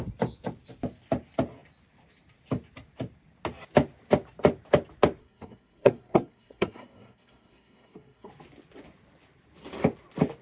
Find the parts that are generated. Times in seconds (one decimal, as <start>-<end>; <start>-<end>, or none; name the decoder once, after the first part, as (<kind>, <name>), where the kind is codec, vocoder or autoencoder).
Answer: 5.2-8.3 (codec, SNAC)